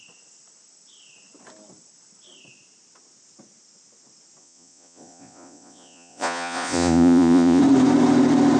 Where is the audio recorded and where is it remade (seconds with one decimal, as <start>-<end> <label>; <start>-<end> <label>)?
0.0-4.4 recorded; 4.4-7.6 remade; 7.6-8.6 recorded